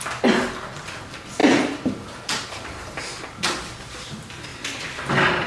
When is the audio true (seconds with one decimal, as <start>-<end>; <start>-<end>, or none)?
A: 0.0-5.5